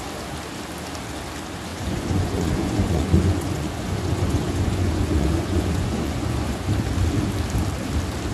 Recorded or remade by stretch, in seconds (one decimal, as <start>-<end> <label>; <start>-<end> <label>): 0.0-1.7 recorded; 1.7-6.7 remade; 6.7-8.3 recorded